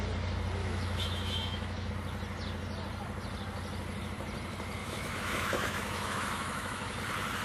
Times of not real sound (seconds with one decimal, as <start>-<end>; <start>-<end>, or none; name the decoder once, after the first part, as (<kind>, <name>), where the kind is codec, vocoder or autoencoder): 0.6-1.9 (autoencoder, DAC-VAE); 4.8-7.0